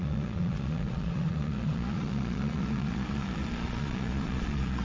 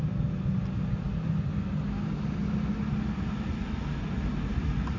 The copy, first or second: first